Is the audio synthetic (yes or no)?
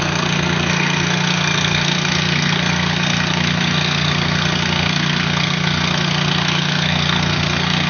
yes